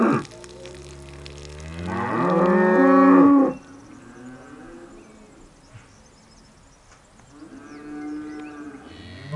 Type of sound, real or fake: real